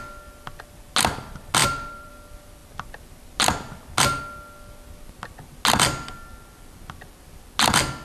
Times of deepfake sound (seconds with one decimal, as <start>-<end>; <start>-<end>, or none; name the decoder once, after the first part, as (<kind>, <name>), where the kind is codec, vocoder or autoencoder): 1.6-2.1 (vocoder, BigVGAN v2)